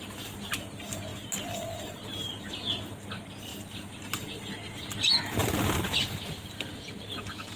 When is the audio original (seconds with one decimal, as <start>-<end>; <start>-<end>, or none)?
0.0-7.6